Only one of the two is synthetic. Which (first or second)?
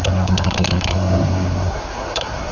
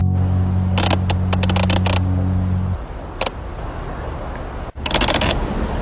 first